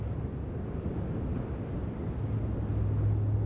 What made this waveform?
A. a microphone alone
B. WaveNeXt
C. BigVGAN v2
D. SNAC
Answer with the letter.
A